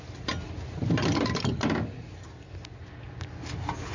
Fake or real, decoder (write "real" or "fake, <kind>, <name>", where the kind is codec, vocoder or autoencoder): real